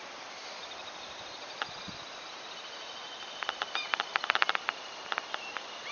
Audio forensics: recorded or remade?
recorded